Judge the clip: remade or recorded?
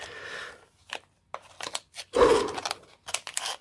recorded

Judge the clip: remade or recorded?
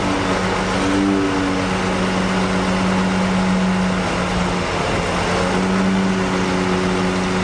recorded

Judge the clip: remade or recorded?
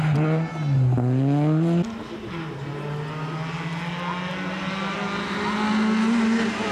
recorded